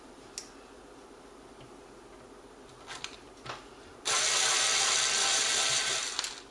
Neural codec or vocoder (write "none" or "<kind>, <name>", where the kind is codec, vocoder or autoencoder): none